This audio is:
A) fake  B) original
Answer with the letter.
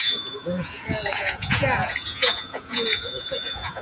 A